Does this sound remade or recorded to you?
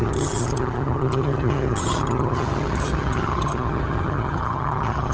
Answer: remade